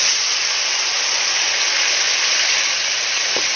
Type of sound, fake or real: real